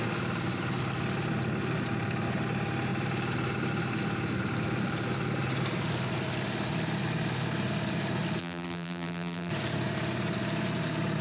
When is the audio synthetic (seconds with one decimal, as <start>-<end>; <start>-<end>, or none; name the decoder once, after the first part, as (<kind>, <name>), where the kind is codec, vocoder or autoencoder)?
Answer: 8.4-9.5 (vocoder, BigVGAN v2)